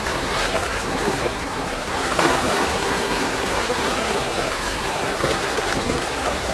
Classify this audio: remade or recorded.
remade